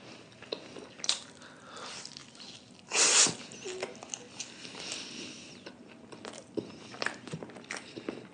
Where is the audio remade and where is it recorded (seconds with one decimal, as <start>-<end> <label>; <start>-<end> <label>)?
0.0-8.3 recorded